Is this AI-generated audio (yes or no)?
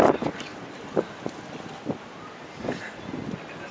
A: no